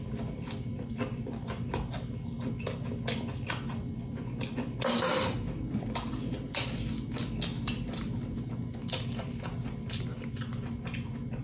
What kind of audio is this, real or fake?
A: real